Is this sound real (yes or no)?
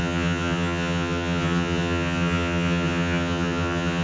no